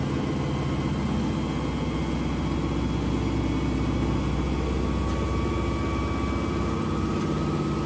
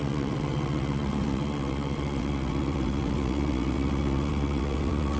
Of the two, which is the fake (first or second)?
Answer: second